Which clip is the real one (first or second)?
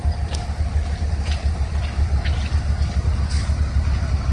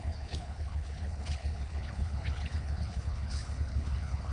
first